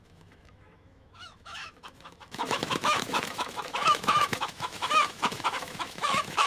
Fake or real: fake